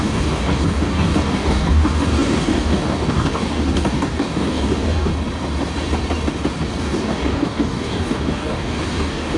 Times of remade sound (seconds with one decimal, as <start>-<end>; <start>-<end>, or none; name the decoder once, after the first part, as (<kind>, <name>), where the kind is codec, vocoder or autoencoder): 0.0-5.1 (codec, DAC); 6.8-9.4